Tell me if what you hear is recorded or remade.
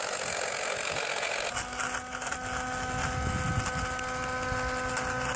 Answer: recorded